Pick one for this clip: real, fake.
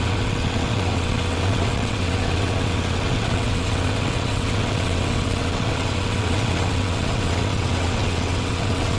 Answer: fake